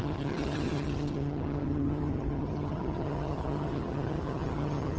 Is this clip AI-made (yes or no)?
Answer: yes